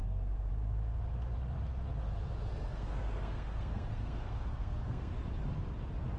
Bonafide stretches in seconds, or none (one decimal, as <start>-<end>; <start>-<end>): 0.5-2.5; 5.1-6.2